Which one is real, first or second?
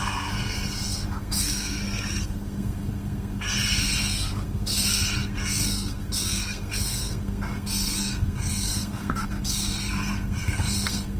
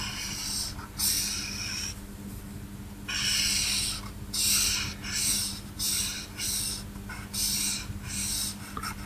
second